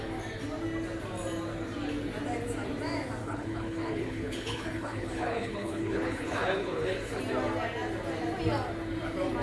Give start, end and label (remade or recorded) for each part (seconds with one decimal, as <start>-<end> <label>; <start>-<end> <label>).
0.0-3.2 recorded; 3.2-7.2 remade; 7.2-9.4 recorded